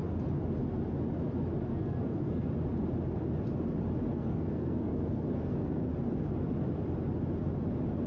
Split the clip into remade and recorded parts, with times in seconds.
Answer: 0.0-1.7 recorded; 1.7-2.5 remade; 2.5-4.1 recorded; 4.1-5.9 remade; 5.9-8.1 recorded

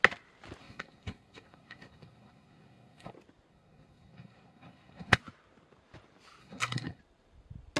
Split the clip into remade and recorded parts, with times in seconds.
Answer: 0.0-0.6 recorded; 0.6-3.1 remade; 3.1-3.5 recorded; 3.5-5.2 remade; 5.2-6.4 recorded; 6.4-7.0 remade; 7.0-7.8 recorded

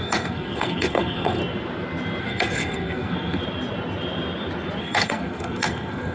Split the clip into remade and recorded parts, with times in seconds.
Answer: 0.0-1.4 remade; 1.4-2.2 recorded; 2.2-3.4 remade; 3.4-4.8 recorded; 4.8-6.1 remade

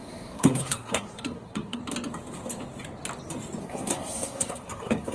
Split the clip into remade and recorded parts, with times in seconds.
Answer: 0.0-1.8 remade; 1.8-3.6 recorded; 3.6-5.1 remade